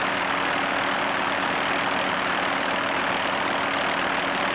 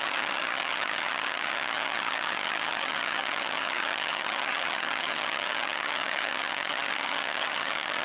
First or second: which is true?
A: first